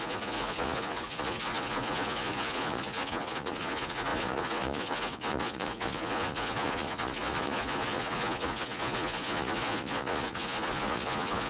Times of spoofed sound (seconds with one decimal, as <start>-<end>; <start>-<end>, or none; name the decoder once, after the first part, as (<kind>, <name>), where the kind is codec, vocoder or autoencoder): 0.0-11.5 (vocoder, Vocos)